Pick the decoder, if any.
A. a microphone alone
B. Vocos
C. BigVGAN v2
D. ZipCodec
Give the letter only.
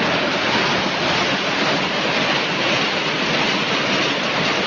A